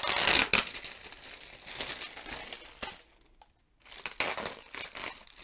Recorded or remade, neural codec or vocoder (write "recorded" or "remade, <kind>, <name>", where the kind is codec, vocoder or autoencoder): recorded